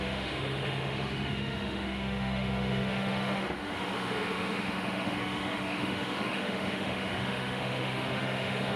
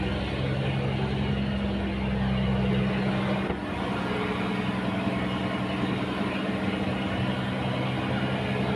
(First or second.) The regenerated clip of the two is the first